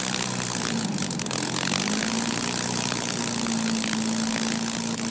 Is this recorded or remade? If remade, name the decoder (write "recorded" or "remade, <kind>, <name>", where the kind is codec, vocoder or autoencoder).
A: recorded